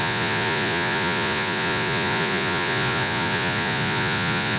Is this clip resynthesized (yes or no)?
yes